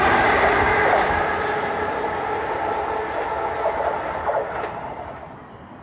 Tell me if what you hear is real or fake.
real